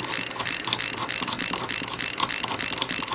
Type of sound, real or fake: real